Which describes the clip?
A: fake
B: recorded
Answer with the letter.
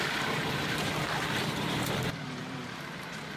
A